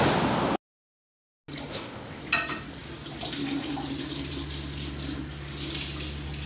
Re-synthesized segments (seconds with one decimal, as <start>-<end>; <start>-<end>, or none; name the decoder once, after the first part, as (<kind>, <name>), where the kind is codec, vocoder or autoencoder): 1.7-2.2 (codec, ZipCodec)